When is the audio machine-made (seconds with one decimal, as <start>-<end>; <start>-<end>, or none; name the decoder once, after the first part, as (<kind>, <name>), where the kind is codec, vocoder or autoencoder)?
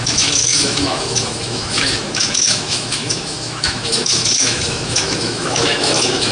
0.0-6.3 (autoencoder, DAC-VAE)